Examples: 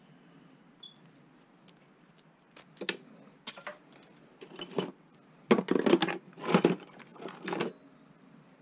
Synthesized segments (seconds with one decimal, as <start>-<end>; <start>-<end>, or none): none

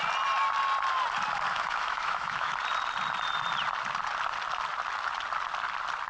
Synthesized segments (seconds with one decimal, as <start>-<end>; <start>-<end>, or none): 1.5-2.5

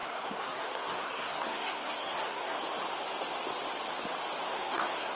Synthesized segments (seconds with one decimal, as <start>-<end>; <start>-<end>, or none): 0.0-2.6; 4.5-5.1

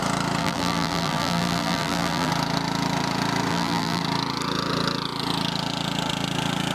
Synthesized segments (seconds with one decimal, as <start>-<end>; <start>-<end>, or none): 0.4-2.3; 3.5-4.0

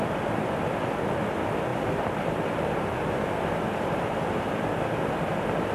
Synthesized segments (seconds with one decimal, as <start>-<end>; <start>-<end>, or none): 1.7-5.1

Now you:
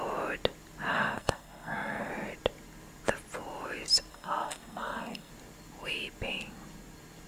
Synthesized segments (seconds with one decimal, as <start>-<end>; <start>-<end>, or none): 0.9-2.1; 4.1-5.3